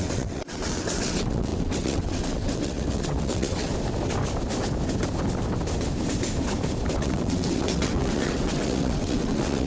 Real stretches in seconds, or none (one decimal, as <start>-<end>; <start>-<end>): 3.7-6.9